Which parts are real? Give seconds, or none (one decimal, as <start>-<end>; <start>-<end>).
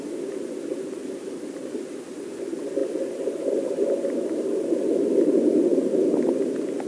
0.0-5.7; 6.2-6.9